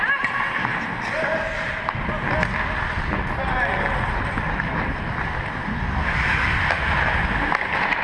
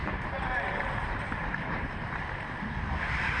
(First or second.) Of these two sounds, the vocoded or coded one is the second